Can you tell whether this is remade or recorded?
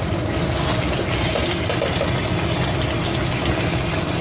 recorded